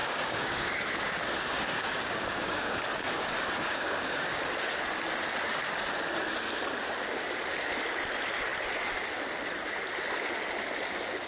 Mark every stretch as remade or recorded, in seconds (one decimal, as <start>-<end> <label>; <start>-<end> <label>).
0.0-4.4 remade; 4.4-11.3 recorded

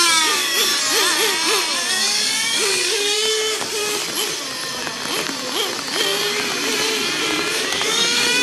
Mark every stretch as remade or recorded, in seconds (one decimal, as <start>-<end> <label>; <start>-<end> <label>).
0.0-0.7 remade; 0.7-1.9 recorded; 1.9-4.0 remade; 4.0-7.5 recorded; 7.5-8.4 remade

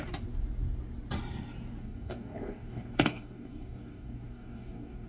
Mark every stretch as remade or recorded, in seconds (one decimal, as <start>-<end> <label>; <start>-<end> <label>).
0.0-1.8 recorded; 1.8-5.1 remade

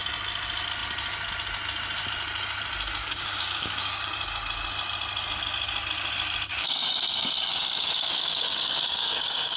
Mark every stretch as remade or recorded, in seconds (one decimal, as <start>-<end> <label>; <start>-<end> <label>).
0.0-3.0 recorded; 3.0-4.1 remade; 4.1-6.5 recorded; 6.5-9.6 remade

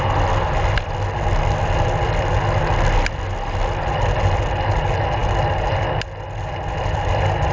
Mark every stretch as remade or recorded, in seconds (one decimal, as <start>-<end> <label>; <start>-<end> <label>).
0.0-7.5 recorded

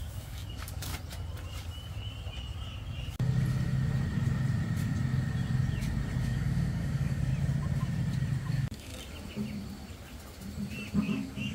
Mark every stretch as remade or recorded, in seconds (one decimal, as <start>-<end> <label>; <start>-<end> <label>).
0.0-0.9 remade; 0.9-6.2 recorded; 6.2-7.3 remade; 7.3-8.4 recorded; 8.4-8.9 remade; 8.9-11.0 recorded; 11.0-11.5 remade